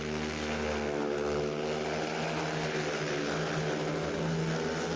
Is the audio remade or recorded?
recorded